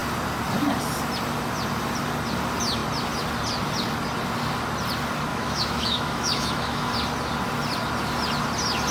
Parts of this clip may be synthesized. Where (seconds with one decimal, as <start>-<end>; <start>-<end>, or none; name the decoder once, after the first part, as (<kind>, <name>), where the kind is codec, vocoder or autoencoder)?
5.3-6.9 (autoencoder, DAC-VAE)